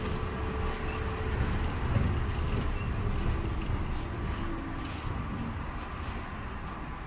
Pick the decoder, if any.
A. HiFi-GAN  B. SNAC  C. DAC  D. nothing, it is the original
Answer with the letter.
D